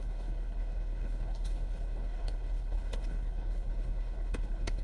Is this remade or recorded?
remade